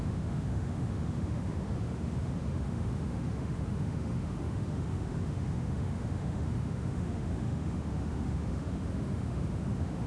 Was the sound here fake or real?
fake